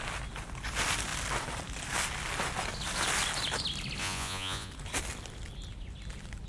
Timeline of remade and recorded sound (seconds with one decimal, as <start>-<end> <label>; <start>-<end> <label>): 0.0-4.0 recorded; 4.0-4.7 remade; 4.7-6.5 recorded